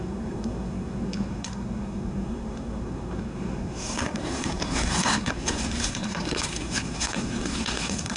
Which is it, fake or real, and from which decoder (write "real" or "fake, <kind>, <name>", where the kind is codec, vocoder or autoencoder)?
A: fake, codec, SNAC